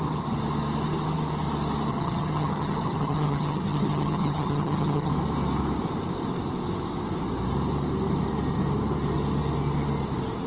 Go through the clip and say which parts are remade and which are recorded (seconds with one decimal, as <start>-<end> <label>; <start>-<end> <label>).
0.0-1.9 recorded; 1.9-5.1 remade; 5.1-10.5 recorded